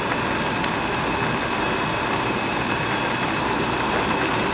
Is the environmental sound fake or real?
real